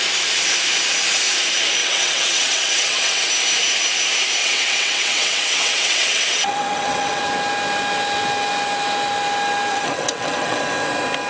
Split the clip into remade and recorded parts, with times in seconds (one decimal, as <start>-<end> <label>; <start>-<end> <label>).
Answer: 0.0-1.8 recorded; 1.8-3.3 remade; 3.3-4.4 recorded; 4.4-7.2 remade; 7.2-9.7 recorded; 9.7-10.6 remade; 10.6-11.3 recorded